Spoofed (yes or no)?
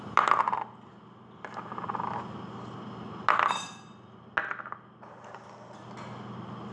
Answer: no